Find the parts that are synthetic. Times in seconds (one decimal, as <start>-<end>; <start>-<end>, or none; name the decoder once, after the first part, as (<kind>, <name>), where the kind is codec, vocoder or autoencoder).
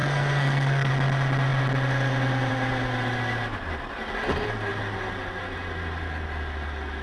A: 0.0-0.9 (codec, SNAC)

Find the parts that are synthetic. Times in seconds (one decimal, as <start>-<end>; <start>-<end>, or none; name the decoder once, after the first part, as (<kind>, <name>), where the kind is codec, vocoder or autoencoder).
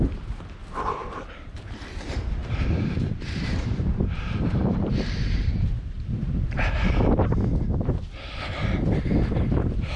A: 1.0-1.5 (vocoder, BigVGAN v2); 2.4-6.9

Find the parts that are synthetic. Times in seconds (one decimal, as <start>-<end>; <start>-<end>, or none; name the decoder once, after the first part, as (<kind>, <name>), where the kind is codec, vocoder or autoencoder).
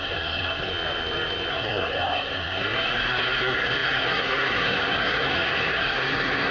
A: 0.0-0.7 (codec, SNAC); 1.5-6.5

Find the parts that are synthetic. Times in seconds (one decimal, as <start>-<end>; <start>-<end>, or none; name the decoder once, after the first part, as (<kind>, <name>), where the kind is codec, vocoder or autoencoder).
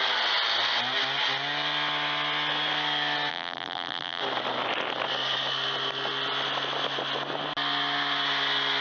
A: 3.3-4.2 (vocoder, BigVGAN v2)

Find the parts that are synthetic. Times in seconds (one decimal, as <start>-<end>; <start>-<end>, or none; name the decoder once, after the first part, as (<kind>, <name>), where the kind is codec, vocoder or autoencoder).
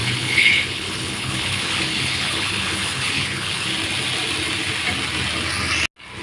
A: 0.0-3.7 (codec, HILCodec)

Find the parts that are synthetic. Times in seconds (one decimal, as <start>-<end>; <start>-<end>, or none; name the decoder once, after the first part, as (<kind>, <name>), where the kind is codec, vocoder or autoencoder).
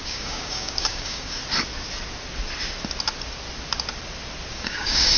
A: 0.0-1.4 (codec, DAC); 4.5-5.2